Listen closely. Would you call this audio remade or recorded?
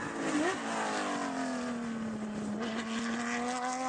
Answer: recorded